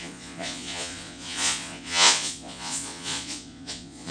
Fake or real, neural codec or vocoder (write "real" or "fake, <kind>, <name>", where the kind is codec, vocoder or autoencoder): fake, vocoder, Vocos